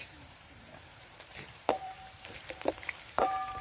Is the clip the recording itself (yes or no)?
no